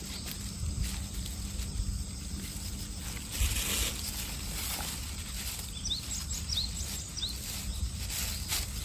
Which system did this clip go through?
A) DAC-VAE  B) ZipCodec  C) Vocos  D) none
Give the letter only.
D